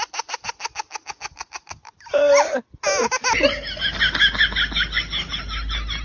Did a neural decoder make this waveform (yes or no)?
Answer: no